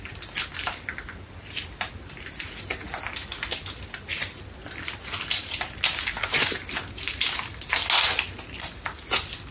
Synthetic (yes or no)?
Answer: no